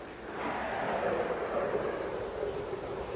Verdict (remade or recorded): recorded